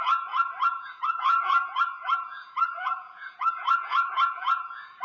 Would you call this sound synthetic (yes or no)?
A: yes